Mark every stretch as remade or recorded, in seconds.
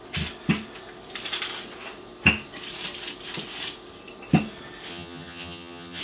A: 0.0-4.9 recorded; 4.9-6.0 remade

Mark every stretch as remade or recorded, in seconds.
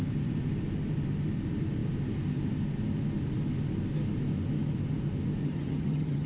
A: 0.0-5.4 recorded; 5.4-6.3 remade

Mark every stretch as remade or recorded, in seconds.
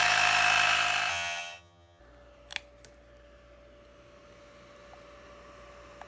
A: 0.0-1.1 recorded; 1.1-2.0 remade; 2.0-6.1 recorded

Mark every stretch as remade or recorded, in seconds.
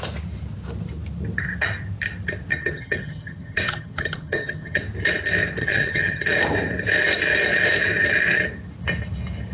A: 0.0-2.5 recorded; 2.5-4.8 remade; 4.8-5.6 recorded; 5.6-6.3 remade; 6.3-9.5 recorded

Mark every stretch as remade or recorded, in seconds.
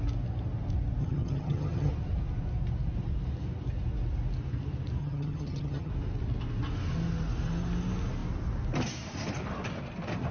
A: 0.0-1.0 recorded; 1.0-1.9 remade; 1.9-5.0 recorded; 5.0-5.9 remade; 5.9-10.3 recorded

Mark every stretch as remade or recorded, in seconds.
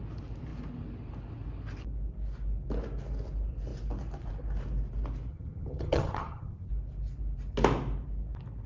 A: 0.0-5.3 recorded; 5.3-6.7 remade; 6.7-8.7 recorded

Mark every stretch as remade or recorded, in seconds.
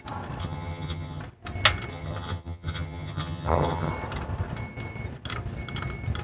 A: 0.0-0.4 recorded; 0.4-1.2 remade; 1.2-1.9 recorded; 1.9-3.9 remade; 3.9-6.2 recorded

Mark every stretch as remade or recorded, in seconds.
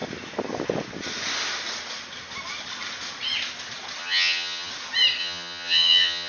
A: 0.0-4.0 recorded; 4.0-4.7 remade; 4.7-5.2 recorded; 5.2-6.3 remade